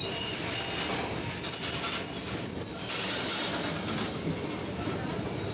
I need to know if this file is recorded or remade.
recorded